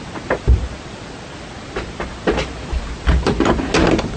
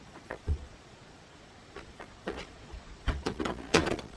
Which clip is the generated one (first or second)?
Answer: second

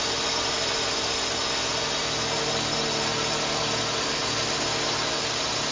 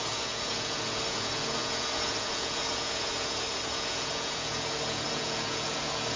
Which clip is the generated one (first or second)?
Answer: second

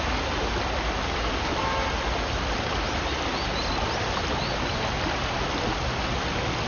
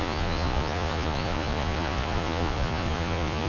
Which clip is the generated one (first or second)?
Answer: second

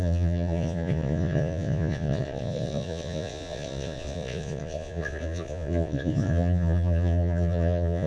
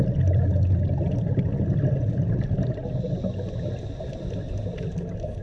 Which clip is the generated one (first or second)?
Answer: first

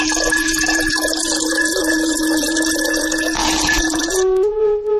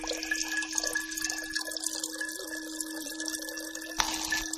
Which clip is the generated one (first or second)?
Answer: first